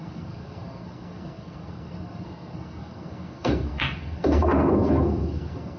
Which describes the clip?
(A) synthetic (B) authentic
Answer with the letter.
A